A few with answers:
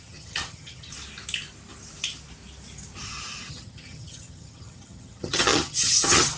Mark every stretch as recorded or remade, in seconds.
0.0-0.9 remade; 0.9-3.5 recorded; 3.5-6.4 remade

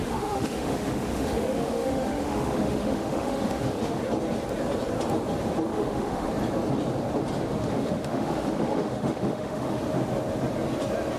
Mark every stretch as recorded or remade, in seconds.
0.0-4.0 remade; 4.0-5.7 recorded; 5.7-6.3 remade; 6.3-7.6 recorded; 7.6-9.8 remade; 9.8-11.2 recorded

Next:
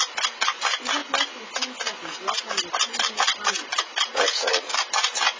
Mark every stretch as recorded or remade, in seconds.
0.0-5.4 recorded

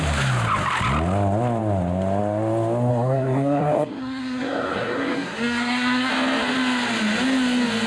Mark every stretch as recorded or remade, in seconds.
0.0-2.9 recorded; 2.9-6.1 remade; 6.1-7.9 recorded

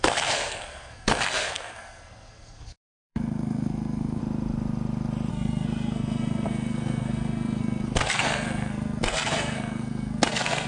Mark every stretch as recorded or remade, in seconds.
0.0-4.2 remade; 4.2-5.3 recorded; 5.3-10.7 remade

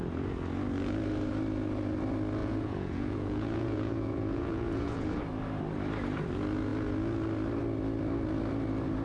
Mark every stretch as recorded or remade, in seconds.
0.0-2.4 recorded; 2.4-5.2 remade; 5.2-9.0 recorded